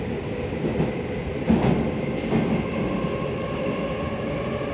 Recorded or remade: recorded